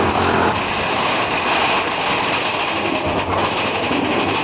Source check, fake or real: real